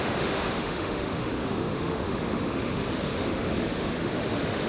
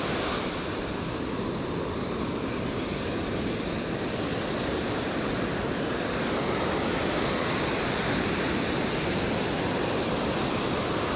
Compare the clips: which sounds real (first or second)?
second